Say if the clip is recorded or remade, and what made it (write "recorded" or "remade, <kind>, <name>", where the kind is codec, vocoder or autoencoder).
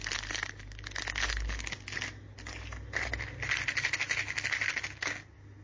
recorded